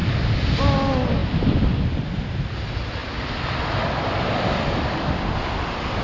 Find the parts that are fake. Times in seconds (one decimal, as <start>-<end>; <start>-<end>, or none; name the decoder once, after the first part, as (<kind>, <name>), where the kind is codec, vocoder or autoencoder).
none